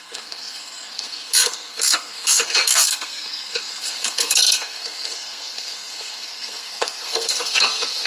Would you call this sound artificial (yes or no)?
yes